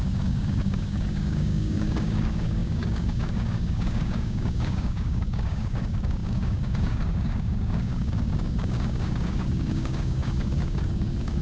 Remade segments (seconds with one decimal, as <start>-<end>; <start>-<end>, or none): 0.0-11.4